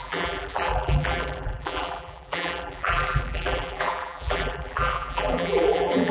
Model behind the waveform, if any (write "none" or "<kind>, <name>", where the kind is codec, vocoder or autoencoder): vocoder, BigVGAN v2